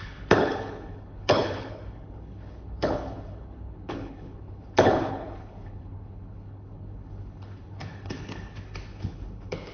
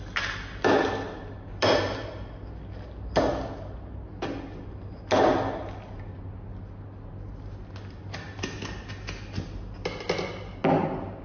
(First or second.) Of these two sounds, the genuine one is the second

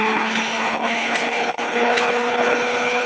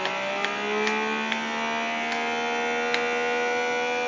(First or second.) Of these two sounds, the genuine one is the second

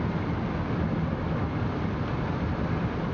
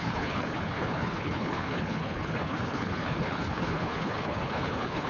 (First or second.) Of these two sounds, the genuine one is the first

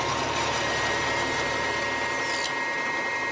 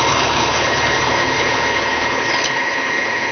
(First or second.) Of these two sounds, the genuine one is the first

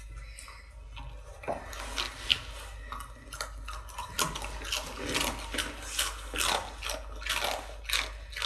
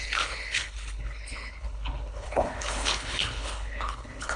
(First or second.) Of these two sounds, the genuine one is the first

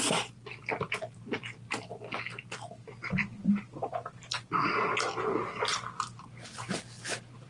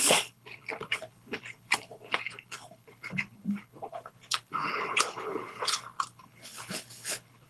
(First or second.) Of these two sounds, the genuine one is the first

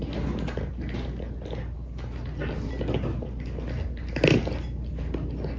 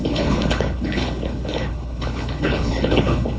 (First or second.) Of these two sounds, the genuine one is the first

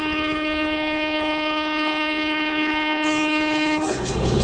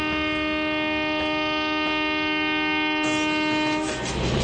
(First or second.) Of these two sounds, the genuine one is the second